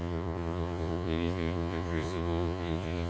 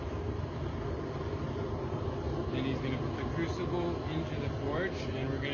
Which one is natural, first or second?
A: second